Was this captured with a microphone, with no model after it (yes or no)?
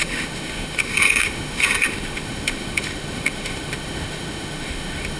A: no